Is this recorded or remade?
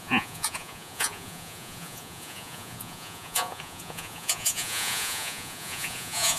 remade